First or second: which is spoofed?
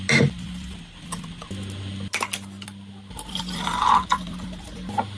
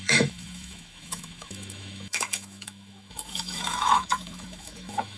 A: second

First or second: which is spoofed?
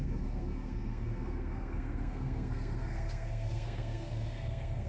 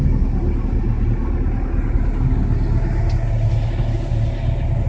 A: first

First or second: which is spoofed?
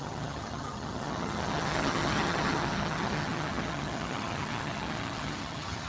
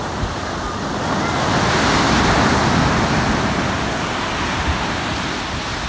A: first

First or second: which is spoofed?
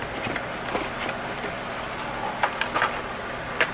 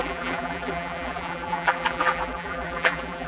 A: second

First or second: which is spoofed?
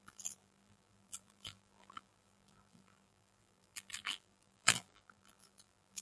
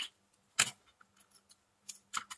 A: first